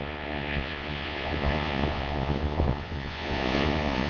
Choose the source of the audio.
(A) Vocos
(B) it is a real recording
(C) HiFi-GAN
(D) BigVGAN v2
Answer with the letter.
A